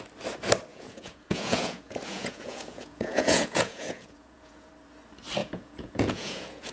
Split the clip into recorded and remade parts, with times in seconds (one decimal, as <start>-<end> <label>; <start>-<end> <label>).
0.0-0.7 recorded; 0.7-4.7 remade; 4.7-5.4 recorded; 5.4-6.7 remade